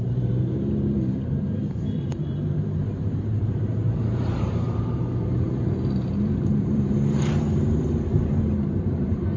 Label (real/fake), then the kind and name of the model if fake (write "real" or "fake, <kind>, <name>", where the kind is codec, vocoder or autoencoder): fake, vocoder, BigVGAN v2